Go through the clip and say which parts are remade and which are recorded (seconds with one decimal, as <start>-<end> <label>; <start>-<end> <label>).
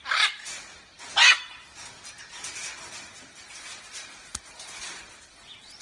0.0-1.1 remade; 1.1-3.8 recorded; 3.8-5.8 remade